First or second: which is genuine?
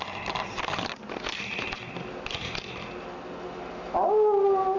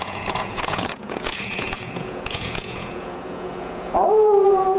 first